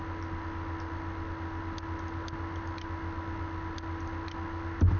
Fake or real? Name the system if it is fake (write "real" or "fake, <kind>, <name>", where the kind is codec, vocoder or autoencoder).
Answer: real